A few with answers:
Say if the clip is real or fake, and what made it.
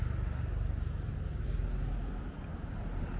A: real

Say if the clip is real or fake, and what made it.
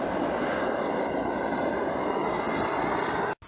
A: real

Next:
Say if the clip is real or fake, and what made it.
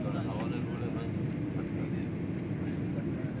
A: real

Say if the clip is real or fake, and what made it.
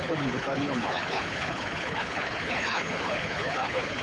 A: fake, codec, HILCodec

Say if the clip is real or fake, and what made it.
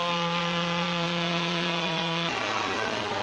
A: fake, vocoder, Vocos